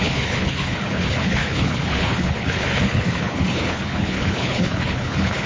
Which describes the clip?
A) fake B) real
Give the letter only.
A